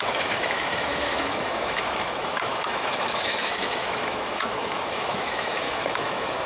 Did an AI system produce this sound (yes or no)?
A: yes